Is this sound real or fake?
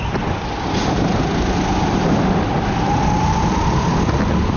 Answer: real